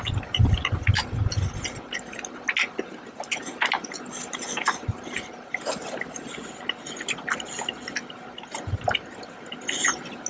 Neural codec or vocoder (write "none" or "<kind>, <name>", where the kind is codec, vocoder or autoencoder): none